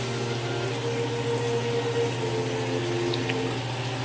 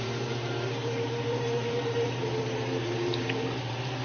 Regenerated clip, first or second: second